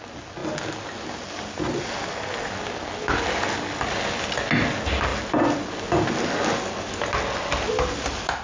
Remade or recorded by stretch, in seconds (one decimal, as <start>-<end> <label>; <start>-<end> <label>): 0.0-8.4 recorded